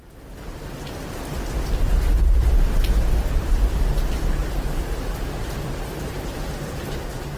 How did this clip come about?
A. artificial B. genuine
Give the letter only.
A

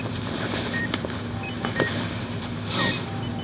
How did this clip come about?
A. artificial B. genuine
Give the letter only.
A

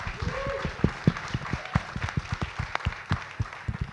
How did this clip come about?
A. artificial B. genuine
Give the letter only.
B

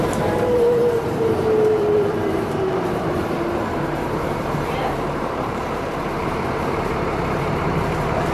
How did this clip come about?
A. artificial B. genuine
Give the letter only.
A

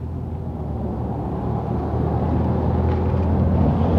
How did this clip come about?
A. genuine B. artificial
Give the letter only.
A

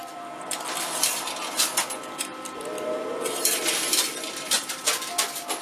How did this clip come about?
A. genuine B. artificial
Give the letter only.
B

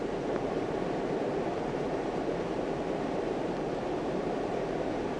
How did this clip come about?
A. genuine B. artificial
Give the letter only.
B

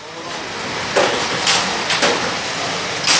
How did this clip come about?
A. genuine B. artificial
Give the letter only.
A